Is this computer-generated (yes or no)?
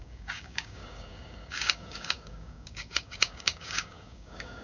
yes